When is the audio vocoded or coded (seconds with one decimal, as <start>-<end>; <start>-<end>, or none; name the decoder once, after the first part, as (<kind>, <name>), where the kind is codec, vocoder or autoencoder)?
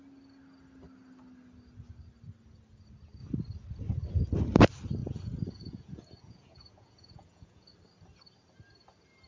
5.0-7.7 (vocoder, Vocos)